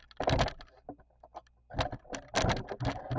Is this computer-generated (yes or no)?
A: no